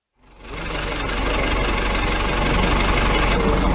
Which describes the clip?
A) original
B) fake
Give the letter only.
A